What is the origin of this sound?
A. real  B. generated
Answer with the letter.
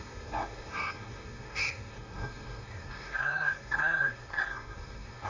B